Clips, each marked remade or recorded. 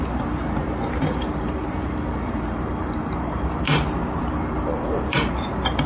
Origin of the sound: remade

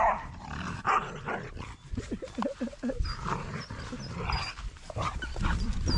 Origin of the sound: remade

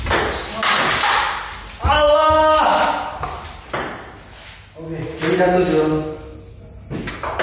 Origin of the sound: recorded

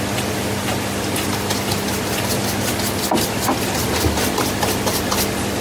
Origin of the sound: recorded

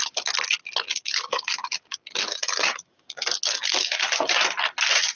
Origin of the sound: recorded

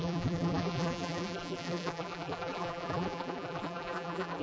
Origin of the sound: remade